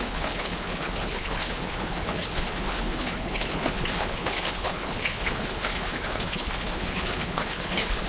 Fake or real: fake